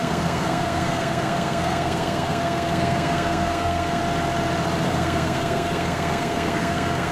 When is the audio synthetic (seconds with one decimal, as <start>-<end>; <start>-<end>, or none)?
0.0-4.0; 4.8-7.1